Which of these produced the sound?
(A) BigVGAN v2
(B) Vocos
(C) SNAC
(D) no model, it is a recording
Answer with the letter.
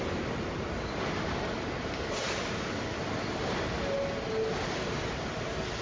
D